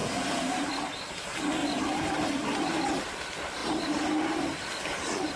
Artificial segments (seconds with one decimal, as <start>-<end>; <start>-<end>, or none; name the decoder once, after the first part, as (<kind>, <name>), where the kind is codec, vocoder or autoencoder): 1.6-2.8 (vocoder, BigVGAN v2); 3.6-4.4